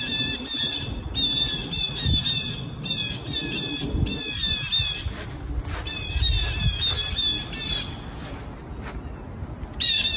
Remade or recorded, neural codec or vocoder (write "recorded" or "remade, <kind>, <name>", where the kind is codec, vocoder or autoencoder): recorded